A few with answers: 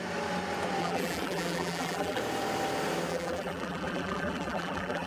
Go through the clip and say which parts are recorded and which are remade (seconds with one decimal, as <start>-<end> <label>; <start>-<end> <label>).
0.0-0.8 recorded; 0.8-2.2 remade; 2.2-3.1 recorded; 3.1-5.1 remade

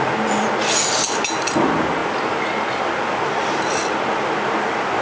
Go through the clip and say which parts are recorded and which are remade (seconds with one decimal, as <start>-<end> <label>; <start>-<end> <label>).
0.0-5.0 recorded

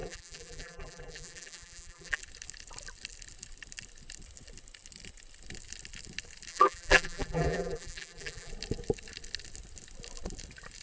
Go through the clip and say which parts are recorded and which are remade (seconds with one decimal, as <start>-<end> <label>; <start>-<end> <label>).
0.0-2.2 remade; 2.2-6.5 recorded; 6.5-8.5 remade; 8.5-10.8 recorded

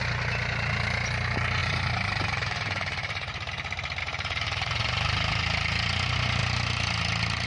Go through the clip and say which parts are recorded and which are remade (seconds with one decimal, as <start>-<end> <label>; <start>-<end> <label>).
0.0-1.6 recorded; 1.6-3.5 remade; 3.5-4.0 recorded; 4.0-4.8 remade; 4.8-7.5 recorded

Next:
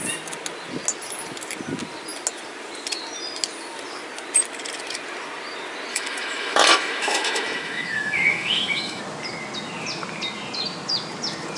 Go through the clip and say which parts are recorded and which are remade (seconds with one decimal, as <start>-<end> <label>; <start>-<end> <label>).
0.0-5.9 recorded; 5.9-9.0 remade; 9.0-11.6 recorded